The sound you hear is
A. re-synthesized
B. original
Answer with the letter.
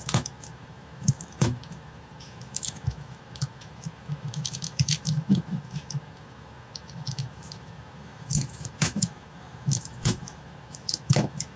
A